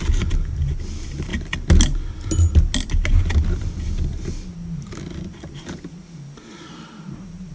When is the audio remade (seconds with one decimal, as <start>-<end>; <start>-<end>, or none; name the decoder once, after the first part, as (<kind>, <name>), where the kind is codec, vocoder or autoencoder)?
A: none